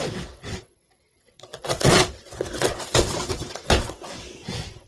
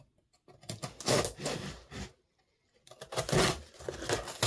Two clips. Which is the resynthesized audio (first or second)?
first